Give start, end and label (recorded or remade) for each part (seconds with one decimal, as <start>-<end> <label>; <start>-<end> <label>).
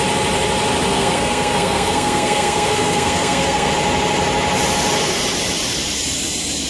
0.0-0.9 recorded; 0.9-3.7 remade; 3.7-6.7 recorded